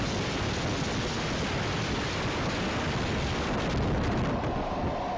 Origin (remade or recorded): recorded